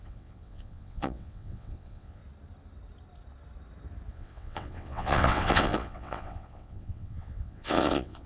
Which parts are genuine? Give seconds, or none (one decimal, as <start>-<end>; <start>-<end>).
2.2-4.1